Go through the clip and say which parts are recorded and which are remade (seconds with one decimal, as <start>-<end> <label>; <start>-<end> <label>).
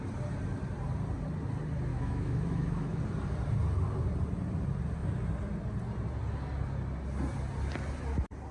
0.0-1.9 recorded; 1.9-3.0 remade; 3.0-8.5 recorded